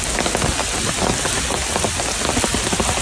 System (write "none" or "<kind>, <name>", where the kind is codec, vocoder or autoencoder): none